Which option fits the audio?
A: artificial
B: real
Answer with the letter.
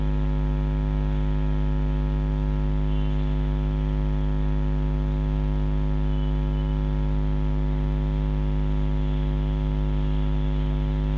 B